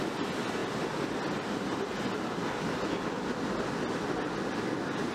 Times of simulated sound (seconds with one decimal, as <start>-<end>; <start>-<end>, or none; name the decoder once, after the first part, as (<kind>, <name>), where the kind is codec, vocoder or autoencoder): none